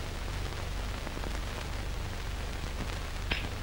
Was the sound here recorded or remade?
recorded